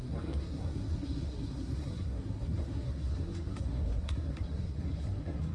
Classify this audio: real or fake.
fake